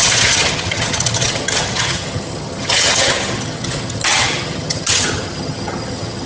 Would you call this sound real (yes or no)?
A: no